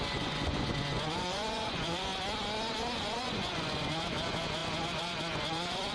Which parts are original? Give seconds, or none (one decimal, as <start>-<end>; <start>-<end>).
2.1-3.0